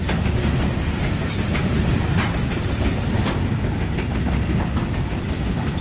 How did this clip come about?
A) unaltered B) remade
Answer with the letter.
A